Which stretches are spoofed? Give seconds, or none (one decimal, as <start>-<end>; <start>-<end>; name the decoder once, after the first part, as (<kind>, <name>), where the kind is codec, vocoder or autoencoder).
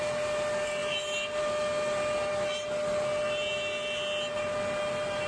none